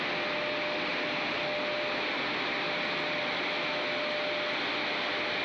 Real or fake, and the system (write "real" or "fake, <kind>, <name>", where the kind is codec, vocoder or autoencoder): real